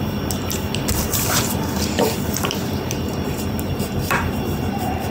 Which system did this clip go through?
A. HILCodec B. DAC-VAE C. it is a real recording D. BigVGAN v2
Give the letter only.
D